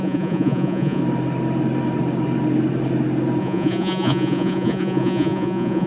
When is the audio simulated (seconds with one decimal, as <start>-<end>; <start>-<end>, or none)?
0.0-1.0; 3.4-5.9